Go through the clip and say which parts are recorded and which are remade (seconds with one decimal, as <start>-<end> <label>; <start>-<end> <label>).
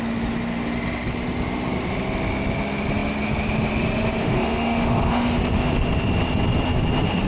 0.0-4.2 recorded; 4.2-5.4 remade; 5.4-7.3 recorded